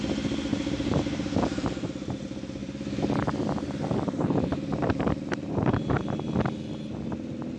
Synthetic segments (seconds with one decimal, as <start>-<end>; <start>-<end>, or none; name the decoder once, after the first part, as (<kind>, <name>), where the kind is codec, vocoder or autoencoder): 0.5-2.2 (vocoder, BigVGAN v2); 2.6-6.2